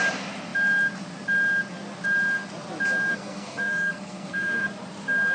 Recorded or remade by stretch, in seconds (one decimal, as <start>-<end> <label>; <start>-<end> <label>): 0.0-3.1 recorded; 3.1-4.7 remade; 4.7-5.3 recorded